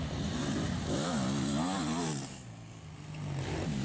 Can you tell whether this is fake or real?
real